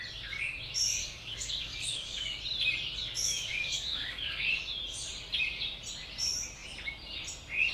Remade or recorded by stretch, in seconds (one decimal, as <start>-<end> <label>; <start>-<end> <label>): 0.0-1.0 recorded; 1.0-2.4 remade; 2.4-3.2 recorded; 3.2-4.4 remade; 4.4-7.7 recorded